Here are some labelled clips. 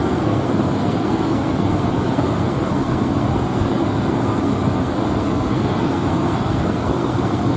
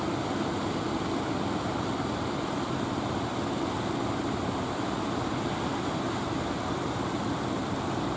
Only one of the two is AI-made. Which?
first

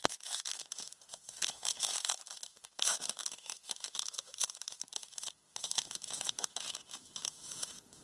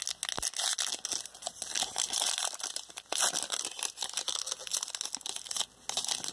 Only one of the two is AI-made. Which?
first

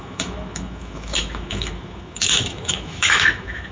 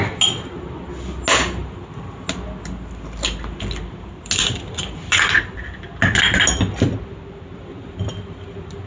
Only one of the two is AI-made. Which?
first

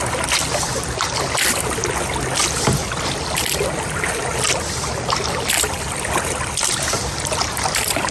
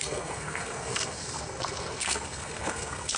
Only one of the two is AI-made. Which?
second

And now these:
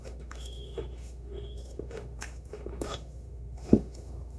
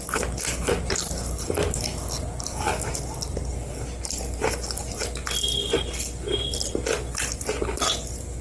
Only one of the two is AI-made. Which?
first